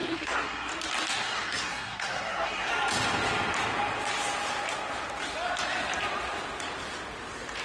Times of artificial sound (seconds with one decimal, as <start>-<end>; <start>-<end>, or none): 0.0-0.7; 1.1-2.7

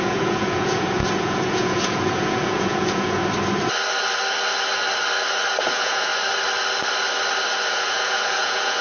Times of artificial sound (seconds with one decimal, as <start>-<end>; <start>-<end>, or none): 0.0-3.2; 5.6-6.1; 7.7-8.8

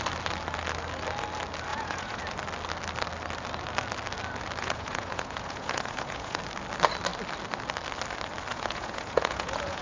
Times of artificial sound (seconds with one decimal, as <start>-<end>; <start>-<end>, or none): 1.7-2.2; 4.6-6.4; 8.5-9.8

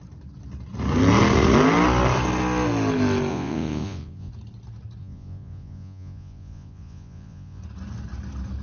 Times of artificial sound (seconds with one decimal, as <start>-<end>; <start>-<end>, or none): 3.3-4.3; 5.0-7.6